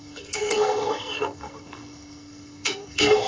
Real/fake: fake